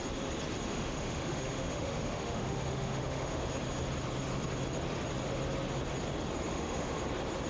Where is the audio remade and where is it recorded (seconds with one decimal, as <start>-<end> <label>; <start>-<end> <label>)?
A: 0.0-0.7 recorded; 0.7-3.4 remade; 3.4-6.5 recorded; 6.5-7.0 remade; 7.0-7.5 recorded